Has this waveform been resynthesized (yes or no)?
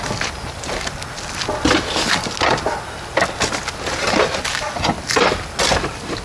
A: no